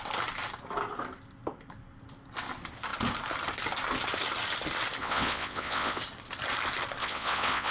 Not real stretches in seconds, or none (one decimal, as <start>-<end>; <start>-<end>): 5.0-6.0; 7.0-7.7